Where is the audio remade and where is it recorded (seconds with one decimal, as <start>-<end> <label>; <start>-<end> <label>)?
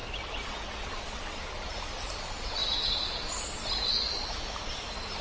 0.0-5.2 recorded